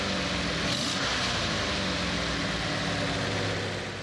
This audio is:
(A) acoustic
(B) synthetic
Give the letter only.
A